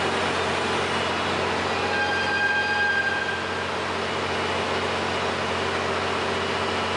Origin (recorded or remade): recorded